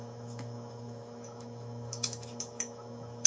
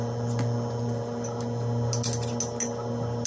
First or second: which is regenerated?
first